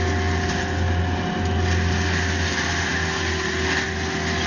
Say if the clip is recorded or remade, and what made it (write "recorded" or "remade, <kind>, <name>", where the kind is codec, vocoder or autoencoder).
recorded